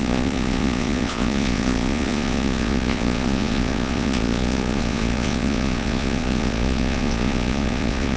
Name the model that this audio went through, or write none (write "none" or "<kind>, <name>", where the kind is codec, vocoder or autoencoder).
vocoder, Vocos